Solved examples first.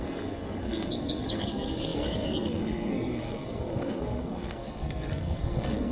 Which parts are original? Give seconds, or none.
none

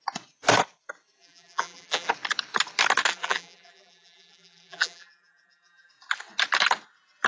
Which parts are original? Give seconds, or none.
0.0-1.2; 2.1-3.1; 5.9-7.3

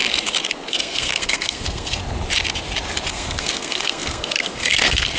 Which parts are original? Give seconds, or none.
0.0-0.7; 2.0-3.1

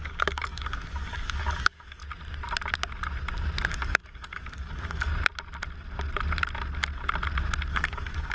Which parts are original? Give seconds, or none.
2.0-3.7; 5.1-7.7